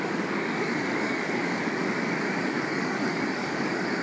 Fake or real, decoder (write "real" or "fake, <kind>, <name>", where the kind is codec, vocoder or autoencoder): fake, codec, DAC